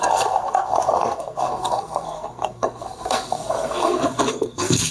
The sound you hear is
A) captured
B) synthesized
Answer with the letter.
B